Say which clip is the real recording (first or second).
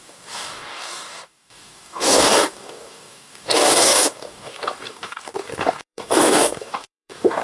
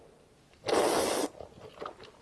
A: second